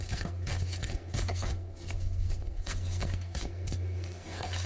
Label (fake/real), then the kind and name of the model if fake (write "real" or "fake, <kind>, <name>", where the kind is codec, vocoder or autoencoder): fake, codec, SNAC